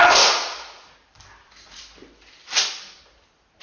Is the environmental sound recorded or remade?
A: recorded